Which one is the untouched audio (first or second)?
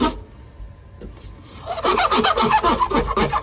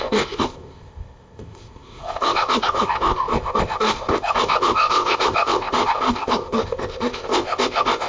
first